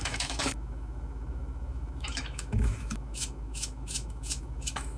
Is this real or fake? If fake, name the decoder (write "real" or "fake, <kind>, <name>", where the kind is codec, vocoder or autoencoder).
fake, autoencoder, DAC-VAE